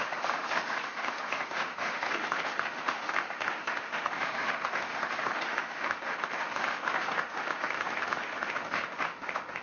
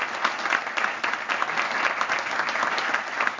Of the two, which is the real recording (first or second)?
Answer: second